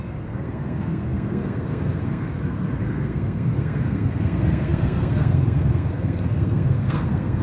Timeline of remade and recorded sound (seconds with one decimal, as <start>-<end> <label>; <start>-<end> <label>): 0.0-7.4 remade